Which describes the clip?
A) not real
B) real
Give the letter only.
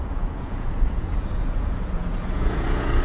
A